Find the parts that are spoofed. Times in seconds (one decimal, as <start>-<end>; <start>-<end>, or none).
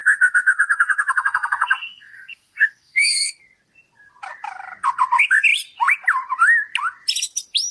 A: 0.0-3.4